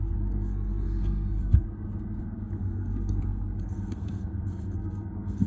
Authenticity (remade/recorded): remade